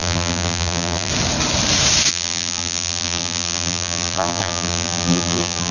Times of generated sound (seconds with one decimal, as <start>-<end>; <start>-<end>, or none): 0.0-1.1; 2.1-5.7